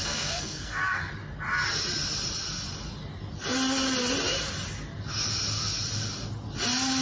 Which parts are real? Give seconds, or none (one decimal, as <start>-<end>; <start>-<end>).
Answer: 1.1-7.0